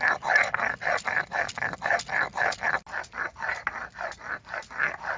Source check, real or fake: real